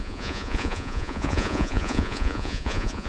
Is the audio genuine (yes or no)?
no